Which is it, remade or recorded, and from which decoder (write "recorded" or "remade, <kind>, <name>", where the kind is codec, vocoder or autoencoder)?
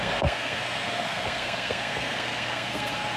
remade, codec, SNAC